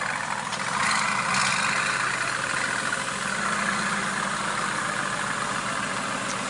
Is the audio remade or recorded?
recorded